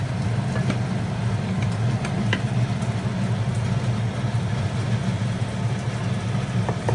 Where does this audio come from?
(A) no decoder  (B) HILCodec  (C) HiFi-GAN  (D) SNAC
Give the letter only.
A